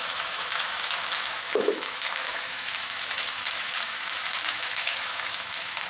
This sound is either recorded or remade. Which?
remade